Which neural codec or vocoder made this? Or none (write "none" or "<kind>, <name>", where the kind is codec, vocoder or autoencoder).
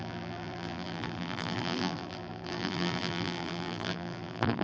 vocoder, BigVGAN v2